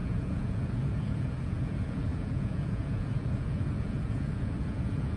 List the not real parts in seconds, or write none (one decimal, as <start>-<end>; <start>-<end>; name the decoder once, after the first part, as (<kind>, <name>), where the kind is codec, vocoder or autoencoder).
0.0-5.2 (vocoder, Vocos)